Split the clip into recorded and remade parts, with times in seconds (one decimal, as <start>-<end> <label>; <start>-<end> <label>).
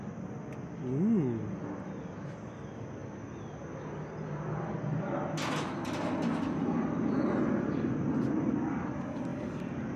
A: 0.0-10.0 recorded